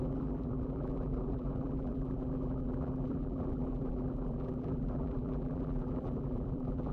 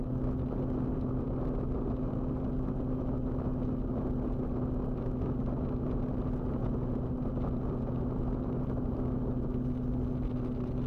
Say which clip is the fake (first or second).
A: first